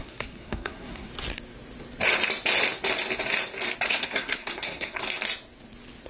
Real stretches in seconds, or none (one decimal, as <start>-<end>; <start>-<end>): 1.1-3.9; 5.0-6.1